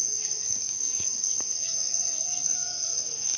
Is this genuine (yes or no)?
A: no